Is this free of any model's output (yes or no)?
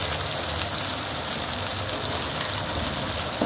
yes